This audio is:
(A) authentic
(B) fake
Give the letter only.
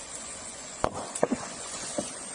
B